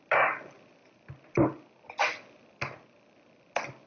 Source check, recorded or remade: recorded